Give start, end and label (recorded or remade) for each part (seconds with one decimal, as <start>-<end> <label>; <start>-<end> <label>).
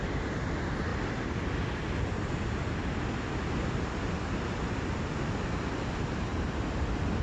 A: 0.0-7.2 recorded